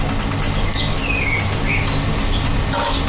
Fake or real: real